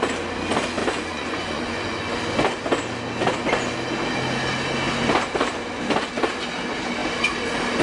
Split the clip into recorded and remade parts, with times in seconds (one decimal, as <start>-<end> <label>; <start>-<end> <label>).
0.0-0.8 recorded; 0.8-2.1 remade; 2.1-7.8 recorded

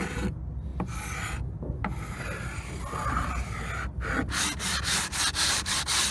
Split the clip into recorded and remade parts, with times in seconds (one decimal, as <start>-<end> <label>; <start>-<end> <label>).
0.0-6.1 recorded

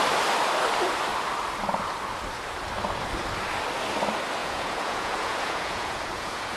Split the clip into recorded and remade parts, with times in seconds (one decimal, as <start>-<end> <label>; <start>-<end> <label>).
0.0-4.4 recorded; 4.4-6.6 remade

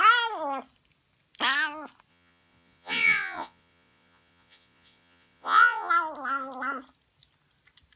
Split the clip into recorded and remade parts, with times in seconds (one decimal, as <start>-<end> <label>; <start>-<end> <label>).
0.0-2.1 recorded; 2.1-5.9 remade; 5.9-8.0 recorded

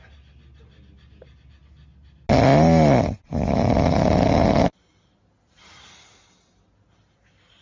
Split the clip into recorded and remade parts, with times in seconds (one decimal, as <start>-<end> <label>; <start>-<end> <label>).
0.0-7.6 recorded

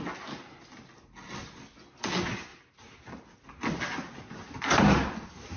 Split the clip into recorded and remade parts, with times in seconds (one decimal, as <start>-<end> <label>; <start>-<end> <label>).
0.0-5.6 recorded

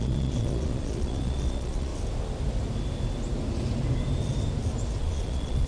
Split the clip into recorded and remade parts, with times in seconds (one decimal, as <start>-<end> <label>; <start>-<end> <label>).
0.0-1.9 remade; 1.9-5.0 recorded; 5.0-5.7 remade